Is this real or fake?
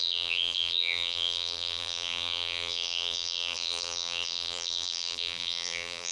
fake